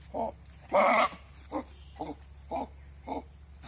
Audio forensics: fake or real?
real